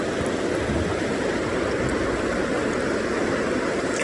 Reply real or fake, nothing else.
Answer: real